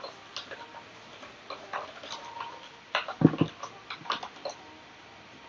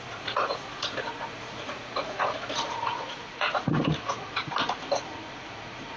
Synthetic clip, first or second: second